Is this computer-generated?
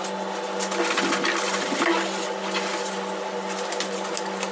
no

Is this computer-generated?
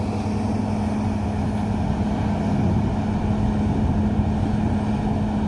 no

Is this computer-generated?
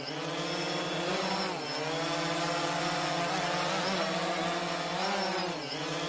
no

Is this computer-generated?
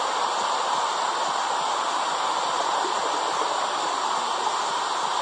no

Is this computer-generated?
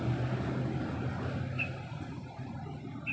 no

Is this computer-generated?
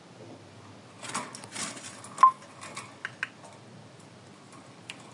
no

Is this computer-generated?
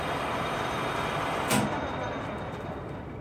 no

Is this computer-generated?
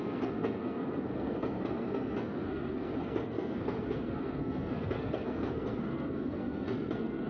yes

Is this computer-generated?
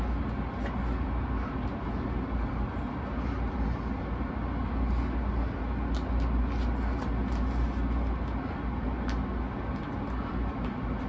no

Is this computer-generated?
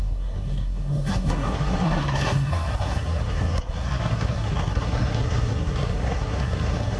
yes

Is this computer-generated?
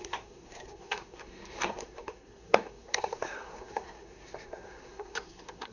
yes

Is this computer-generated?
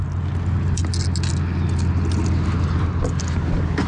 no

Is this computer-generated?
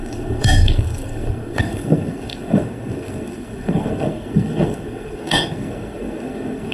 yes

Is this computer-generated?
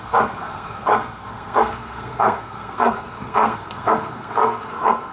yes